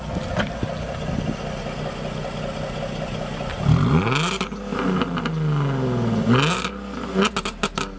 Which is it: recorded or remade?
recorded